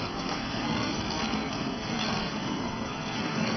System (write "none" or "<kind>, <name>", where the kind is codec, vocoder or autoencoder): codec, SNAC